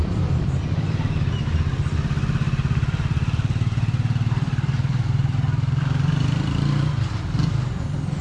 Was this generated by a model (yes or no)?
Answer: yes